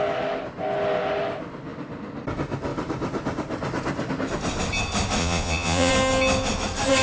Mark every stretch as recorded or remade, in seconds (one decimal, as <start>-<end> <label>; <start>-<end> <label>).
0.0-5.2 recorded; 5.2-5.9 remade; 5.9-7.0 recorded